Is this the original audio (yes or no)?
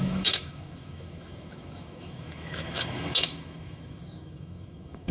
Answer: no